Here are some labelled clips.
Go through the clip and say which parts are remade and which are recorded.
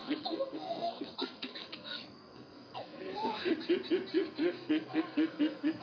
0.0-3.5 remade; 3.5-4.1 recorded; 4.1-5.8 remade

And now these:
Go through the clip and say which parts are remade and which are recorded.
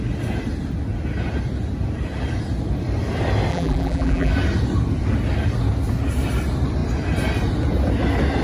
0.0-3.5 recorded; 3.5-4.3 remade; 4.3-8.4 recorded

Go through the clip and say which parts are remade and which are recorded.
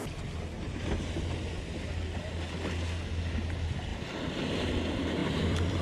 0.0-3.9 recorded; 3.9-4.7 remade; 4.7-5.2 recorded; 5.2-5.8 remade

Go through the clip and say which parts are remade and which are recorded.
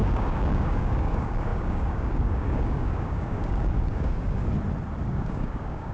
0.0-4.4 remade; 4.4-5.1 recorded; 5.1-5.9 remade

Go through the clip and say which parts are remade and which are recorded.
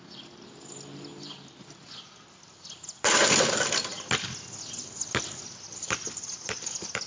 0.0-7.1 recorded